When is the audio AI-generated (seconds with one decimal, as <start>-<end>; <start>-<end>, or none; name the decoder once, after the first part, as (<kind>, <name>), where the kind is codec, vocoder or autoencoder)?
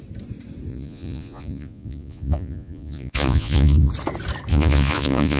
0.7-3.9 (vocoder, Vocos); 4.5-5.4